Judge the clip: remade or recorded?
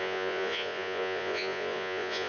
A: remade